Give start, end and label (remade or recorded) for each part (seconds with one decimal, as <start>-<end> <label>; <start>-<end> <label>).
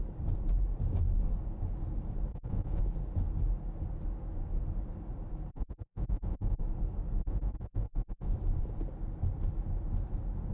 0.0-2.3 recorded; 2.3-2.8 remade; 2.8-5.5 recorded; 5.5-6.6 remade; 6.6-7.2 recorded; 7.2-8.3 remade; 8.3-10.5 recorded